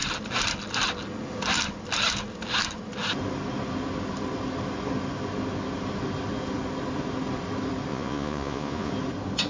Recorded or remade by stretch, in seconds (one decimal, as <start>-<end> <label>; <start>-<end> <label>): 0.0-7.9 recorded; 7.9-8.9 remade; 8.9-9.5 recorded

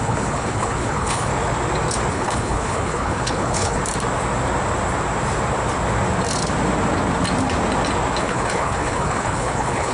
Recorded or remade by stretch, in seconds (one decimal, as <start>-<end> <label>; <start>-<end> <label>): 0.0-1.3 remade; 1.3-2.1 recorded; 2.1-3.8 remade; 3.8-8.2 recorded; 8.2-9.9 remade

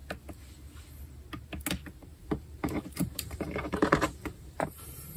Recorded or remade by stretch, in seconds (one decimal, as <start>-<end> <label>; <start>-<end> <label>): 0.0-2.1 recorded; 2.1-5.2 remade

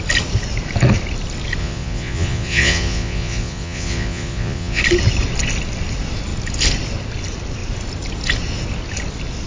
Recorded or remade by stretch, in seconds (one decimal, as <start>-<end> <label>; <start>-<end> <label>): 0.0-1.6 recorded; 1.6-4.8 remade; 4.8-9.5 recorded

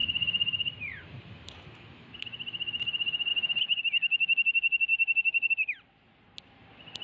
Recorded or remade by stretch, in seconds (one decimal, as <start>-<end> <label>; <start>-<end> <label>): 0.0-2.2 remade; 2.2-3.3 recorded; 3.3-3.8 remade; 3.8-4.9 recorded; 4.9-5.5 remade; 5.5-7.0 recorded